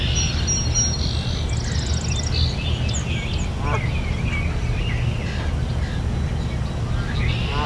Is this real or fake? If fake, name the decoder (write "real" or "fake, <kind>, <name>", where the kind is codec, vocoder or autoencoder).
real